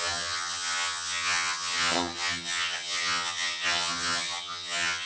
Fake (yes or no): yes